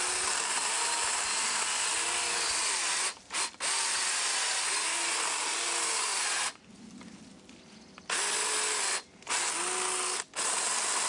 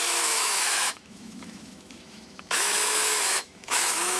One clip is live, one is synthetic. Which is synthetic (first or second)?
second